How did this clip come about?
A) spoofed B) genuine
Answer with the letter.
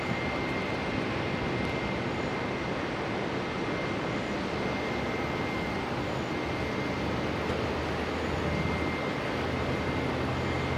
B